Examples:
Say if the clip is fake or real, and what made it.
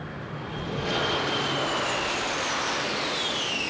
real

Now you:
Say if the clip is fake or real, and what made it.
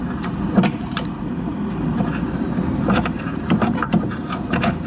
fake, vocoder, BigVGAN v2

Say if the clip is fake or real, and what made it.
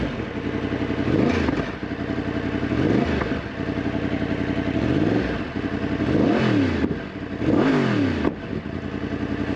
real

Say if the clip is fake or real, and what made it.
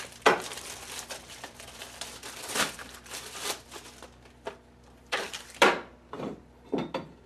fake, vocoder, BigVGAN v2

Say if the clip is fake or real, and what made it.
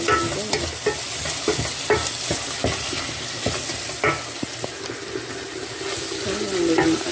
real